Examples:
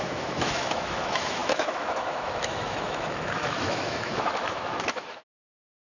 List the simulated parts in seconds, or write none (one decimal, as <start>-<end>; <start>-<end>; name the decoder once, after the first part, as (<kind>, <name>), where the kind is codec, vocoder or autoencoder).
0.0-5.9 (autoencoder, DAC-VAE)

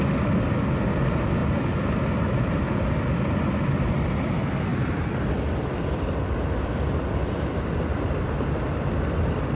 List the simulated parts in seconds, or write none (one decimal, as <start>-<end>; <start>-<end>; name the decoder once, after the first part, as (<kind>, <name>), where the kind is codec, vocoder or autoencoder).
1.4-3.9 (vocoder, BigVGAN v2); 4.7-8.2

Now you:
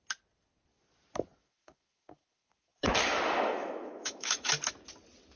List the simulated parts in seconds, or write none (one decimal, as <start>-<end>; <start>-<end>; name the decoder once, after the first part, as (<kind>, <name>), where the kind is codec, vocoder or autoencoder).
1.4-4.5 (autoencoder, DAC-VAE)

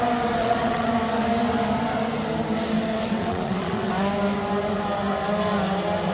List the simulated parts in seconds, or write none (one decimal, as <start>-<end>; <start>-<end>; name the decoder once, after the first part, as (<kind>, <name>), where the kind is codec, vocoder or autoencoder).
0.4-0.9 (vocoder, WaveNeXt); 2.9-3.9